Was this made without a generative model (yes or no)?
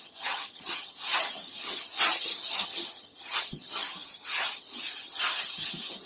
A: no